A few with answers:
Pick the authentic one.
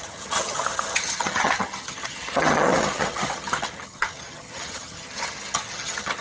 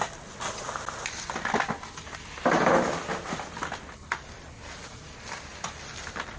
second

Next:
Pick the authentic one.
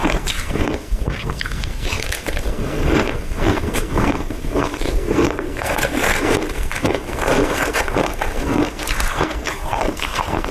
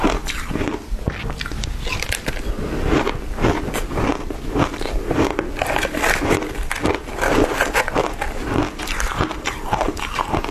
second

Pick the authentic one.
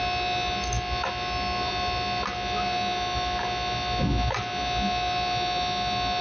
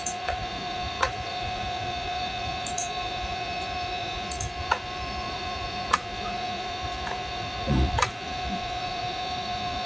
first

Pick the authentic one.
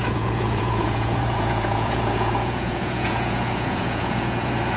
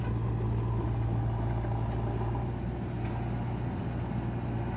second